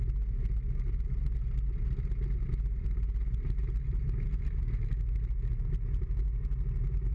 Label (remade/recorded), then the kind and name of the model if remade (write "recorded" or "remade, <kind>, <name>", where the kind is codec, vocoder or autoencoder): recorded